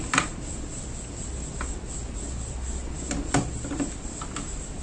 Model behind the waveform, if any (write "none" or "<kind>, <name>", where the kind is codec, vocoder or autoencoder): none